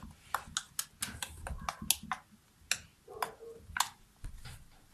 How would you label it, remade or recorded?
recorded